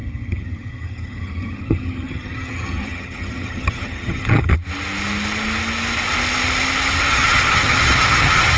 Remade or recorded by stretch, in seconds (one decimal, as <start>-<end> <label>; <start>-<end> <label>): 0.0-4.5 remade; 4.5-7.1 recorded; 7.1-8.6 remade